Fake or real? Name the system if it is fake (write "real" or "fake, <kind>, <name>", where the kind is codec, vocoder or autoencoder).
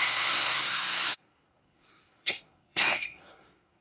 fake, codec, SNAC